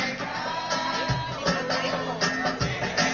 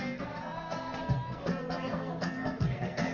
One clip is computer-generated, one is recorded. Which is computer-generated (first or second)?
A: second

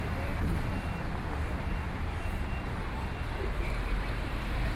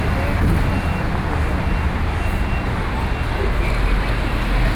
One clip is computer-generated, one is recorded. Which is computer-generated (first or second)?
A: first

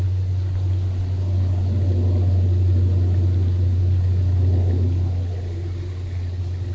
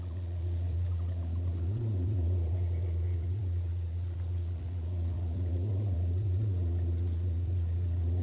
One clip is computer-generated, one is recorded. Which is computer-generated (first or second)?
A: second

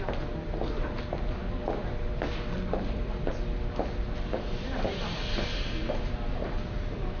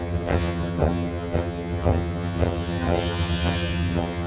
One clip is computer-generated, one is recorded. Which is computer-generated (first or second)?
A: second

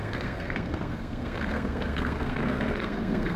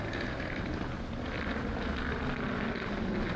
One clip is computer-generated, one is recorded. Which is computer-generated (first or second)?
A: first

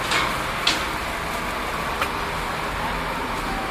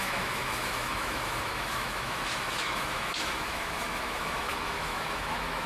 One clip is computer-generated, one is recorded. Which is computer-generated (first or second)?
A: second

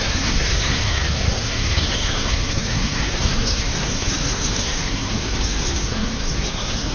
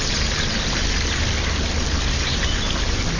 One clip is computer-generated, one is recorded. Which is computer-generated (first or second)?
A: first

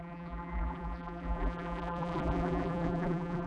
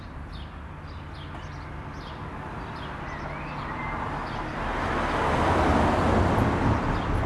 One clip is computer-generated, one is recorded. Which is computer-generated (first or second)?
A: first